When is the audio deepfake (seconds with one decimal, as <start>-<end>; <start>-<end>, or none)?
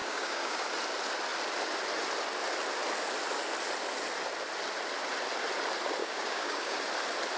0.0-0.7; 6.0-6.8